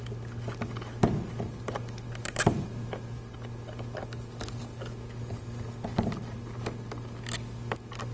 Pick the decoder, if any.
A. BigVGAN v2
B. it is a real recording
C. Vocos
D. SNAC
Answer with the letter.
B